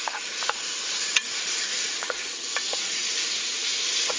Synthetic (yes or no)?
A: yes